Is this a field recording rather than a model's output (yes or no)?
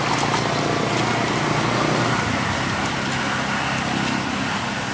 yes